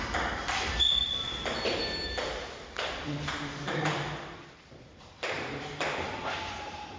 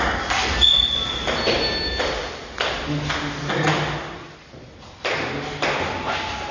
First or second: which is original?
second